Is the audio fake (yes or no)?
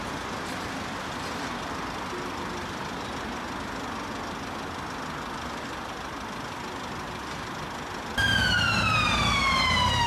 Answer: no